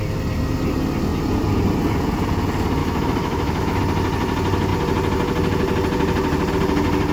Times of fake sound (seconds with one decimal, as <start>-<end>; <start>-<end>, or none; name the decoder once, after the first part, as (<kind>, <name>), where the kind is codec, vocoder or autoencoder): 2.8-3.8 (autoencoder, DAC-VAE)